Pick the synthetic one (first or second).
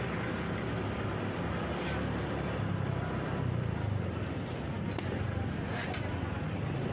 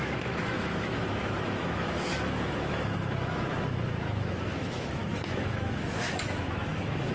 second